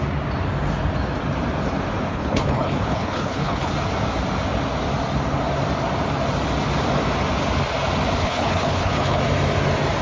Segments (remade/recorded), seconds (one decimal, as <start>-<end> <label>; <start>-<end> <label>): 0.0-2.1 recorded; 2.1-3.7 remade; 3.7-8.2 recorded; 8.2-9.2 remade; 9.2-10.0 recorded